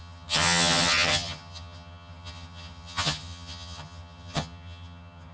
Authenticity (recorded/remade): remade